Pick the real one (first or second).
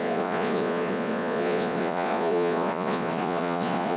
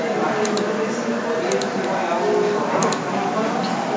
second